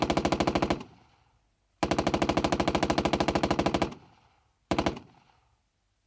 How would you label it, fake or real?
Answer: real